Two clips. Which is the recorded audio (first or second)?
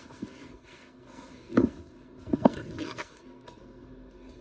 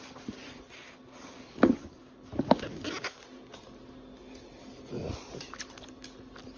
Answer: second